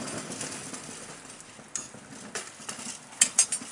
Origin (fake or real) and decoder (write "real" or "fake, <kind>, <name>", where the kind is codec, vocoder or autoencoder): real